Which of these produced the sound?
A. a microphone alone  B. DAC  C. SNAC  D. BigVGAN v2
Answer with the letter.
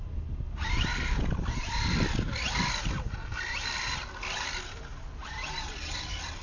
A